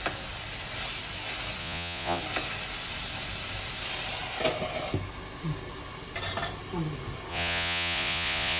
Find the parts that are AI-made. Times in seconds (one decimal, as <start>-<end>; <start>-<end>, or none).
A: 1.6-2.2; 7.3-8.6